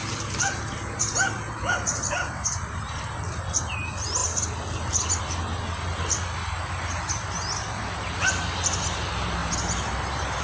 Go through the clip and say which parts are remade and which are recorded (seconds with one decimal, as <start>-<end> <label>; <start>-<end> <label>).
0.0-3.1 remade; 3.1-9.4 recorded; 9.4-10.4 remade